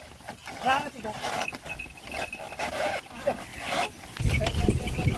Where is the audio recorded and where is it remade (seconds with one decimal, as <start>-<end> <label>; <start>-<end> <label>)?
0.0-5.2 recorded